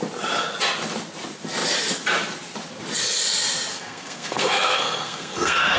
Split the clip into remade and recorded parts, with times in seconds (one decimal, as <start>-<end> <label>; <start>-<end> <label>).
0.0-3.7 recorded; 3.7-5.8 remade